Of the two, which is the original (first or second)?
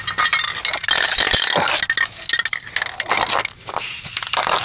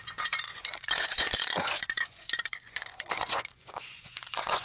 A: first